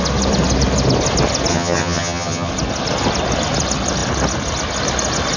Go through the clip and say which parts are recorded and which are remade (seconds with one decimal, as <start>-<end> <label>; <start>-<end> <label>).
0.0-1.5 recorded; 1.5-2.5 remade; 2.5-5.4 recorded